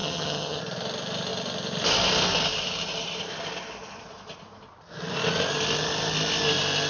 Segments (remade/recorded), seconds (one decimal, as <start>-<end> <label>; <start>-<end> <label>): 0.0-0.6 remade; 0.6-6.9 recorded